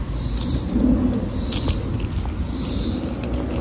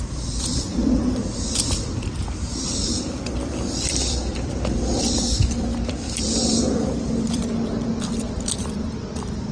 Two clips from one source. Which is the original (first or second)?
first